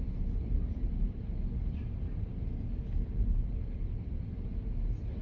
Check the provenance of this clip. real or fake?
real